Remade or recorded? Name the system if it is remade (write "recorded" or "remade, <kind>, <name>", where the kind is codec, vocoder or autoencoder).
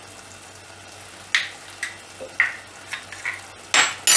recorded